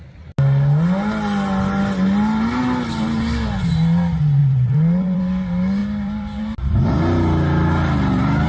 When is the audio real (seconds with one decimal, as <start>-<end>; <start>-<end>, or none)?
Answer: 0.0-4.4; 5.2-5.8; 6.4-8.5